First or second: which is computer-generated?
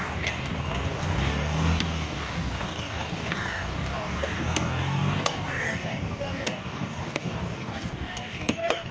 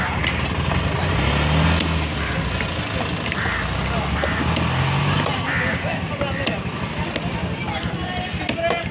first